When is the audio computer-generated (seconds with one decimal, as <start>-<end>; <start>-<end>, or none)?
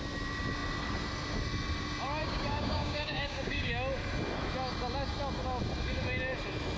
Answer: 2.2-3.7